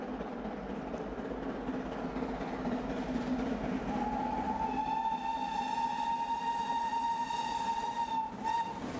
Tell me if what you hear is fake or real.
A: real